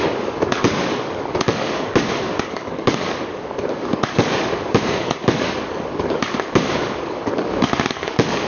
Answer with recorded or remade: remade